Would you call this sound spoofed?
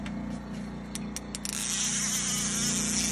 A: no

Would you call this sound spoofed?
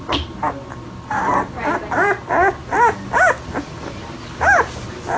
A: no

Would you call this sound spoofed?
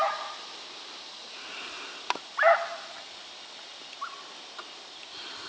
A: no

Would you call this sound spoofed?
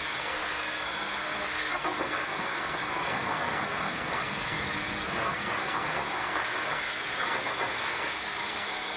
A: yes